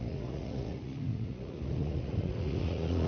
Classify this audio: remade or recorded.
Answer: remade